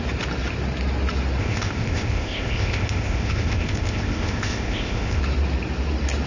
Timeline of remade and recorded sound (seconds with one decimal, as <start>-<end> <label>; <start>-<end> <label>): 0.0-1.4 recorded; 1.4-5.2 remade; 5.2-6.3 recorded